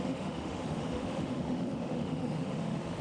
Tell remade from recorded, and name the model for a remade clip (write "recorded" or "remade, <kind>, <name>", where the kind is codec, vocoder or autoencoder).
remade, autoencoder, DAC-VAE